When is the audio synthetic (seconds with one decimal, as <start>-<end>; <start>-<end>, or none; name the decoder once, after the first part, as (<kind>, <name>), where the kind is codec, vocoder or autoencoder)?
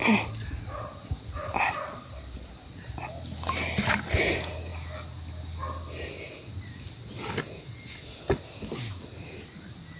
1.4-2.9 (vocoder, BigVGAN v2)